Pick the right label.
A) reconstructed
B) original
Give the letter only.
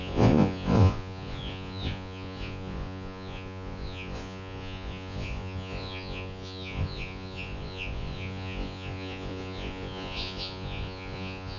A